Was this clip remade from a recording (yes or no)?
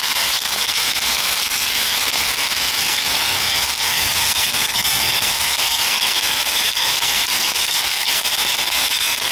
yes